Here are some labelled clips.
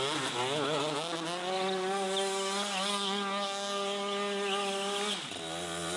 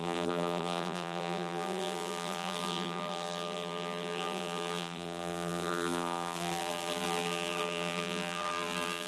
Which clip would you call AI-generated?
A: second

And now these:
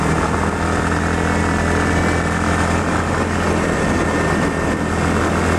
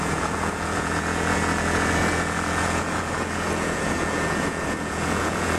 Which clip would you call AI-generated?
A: second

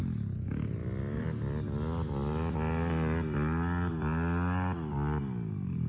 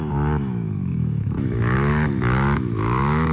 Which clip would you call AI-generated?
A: second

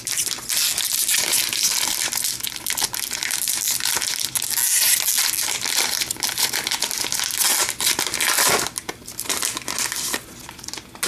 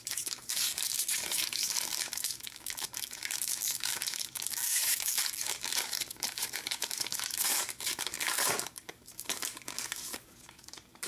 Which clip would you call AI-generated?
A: second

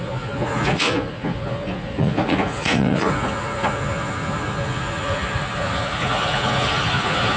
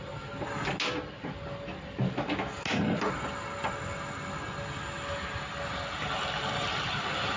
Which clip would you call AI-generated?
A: first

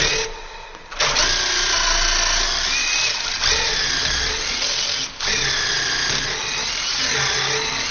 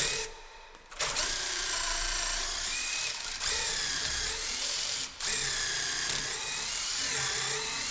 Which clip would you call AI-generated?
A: second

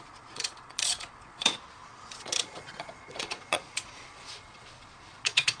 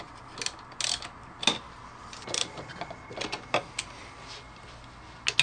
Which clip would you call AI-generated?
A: first